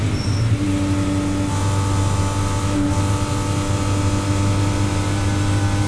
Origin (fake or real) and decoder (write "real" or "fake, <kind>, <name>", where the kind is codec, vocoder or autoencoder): real